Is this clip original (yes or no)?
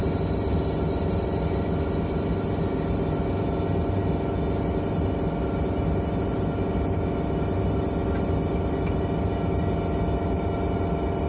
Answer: yes